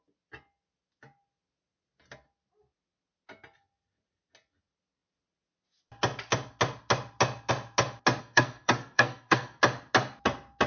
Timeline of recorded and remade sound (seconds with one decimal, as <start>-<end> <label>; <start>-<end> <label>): 0.0-8.2 recorded; 8.2-9.6 remade; 9.6-10.7 recorded